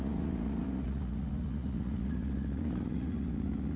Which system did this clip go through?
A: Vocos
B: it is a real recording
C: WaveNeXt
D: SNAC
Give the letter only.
A